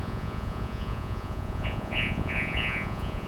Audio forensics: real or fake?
fake